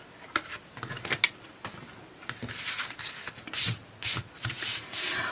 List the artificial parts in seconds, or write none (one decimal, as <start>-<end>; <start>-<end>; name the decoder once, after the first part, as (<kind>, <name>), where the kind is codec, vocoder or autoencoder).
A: none